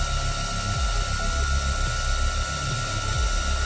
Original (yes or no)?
yes